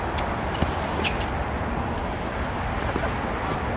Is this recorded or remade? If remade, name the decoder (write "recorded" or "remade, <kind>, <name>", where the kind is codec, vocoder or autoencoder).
remade, vocoder, BigVGAN v2